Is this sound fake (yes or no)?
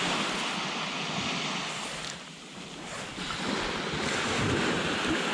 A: no